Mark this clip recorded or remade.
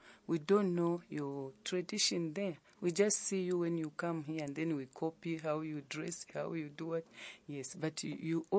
recorded